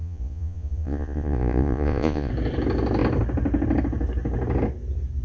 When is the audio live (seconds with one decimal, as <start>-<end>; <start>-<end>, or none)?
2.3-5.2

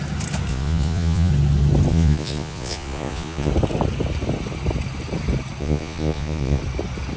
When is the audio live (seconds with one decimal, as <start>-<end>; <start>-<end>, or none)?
0.0-0.5; 1.3-1.9; 3.5-5.6; 6.6-7.2

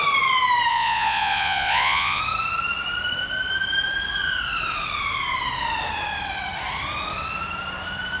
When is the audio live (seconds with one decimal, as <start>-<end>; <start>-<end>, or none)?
0.0-0.7; 2.2-8.2